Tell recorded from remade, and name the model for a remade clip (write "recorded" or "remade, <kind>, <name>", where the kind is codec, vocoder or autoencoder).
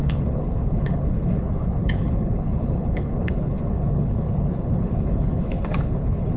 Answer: remade, codec, HILCodec